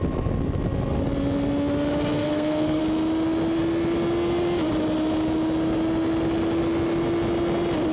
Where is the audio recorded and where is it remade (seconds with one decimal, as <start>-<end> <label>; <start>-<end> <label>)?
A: 0.0-2.2 recorded; 2.2-2.8 remade; 2.8-7.9 recorded